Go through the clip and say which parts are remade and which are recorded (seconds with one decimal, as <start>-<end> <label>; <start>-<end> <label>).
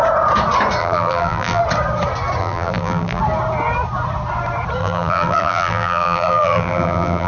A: 0.0-0.8 recorded; 0.8-1.6 remade; 1.6-2.4 recorded; 2.4-3.2 remade; 3.2-4.8 recorded; 4.8-7.3 remade